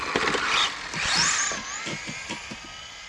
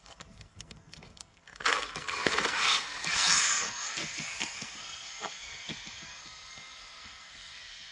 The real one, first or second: first